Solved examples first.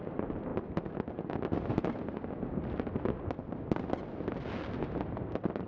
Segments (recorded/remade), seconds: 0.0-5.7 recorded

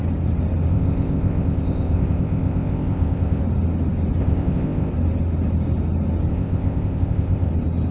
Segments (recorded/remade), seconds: 0.0-0.7 recorded; 0.7-3.4 remade; 3.4-4.2 recorded; 4.2-4.9 remade; 4.9-6.3 recorded; 6.3-7.5 remade; 7.5-7.9 recorded

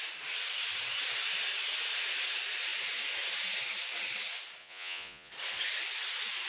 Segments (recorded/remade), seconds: 0.0-4.6 recorded; 4.6-5.3 remade; 5.3-6.5 recorded

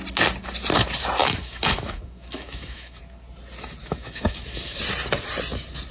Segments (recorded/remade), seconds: 0.0-1.2 recorded; 1.2-3.0 remade; 3.0-3.8 recorded; 3.8-4.8 remade; 4.8-5.9 recorded

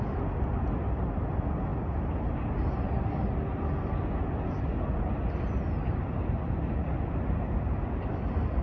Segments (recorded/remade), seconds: 0.0-8.6 recorded